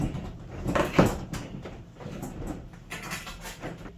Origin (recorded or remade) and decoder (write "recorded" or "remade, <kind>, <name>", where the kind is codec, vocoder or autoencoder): recorded